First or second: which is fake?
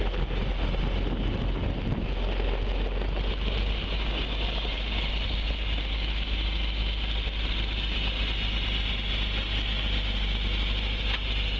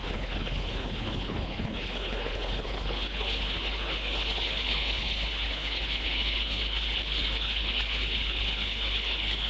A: second